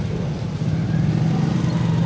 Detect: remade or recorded recorded